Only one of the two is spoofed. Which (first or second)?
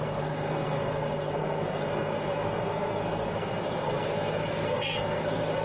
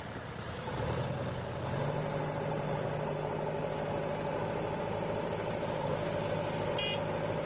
first